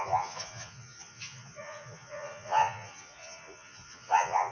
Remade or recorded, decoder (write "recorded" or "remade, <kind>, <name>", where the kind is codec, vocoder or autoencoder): remade, vocoder, Vocos